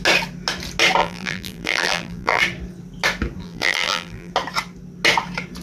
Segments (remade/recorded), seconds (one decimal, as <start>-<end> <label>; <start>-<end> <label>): 0.0-1.0 recorded; 1.0-2.4 remade; 2.4-3.4 recorded; 3.4-4.3 remade; 4.3-5.6 recorded